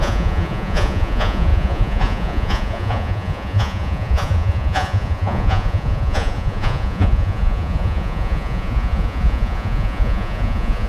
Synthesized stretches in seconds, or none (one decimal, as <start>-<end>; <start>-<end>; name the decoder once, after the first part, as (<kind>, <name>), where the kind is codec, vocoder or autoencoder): 0.0-10.9 (vocoder, Vocos)